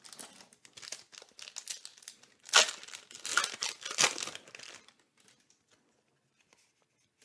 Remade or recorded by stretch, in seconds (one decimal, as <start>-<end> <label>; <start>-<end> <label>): 0.0-3.3 recorded; 3.3-4.0 remade; 4.0-7.2 recorded